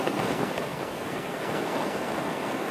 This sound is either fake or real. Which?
fake